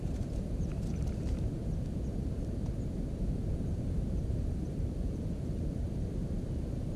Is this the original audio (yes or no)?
no